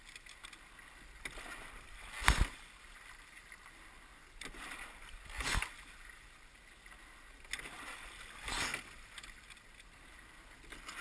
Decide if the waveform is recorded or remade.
recorded